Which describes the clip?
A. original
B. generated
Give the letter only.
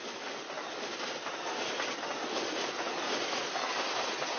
A